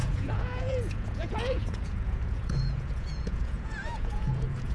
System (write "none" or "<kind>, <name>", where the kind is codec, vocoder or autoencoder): vocoder, Vocos